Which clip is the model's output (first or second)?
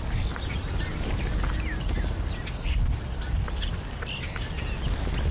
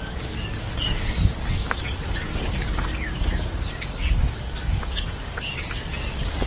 second